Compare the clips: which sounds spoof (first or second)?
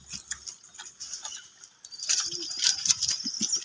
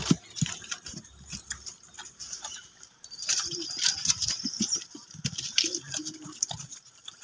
second